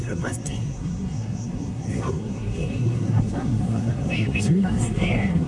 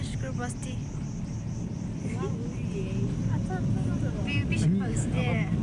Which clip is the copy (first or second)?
first